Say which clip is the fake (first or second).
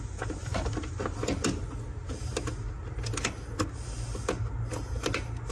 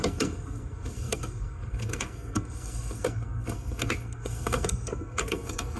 second